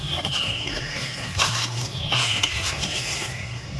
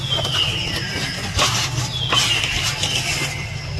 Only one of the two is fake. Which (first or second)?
first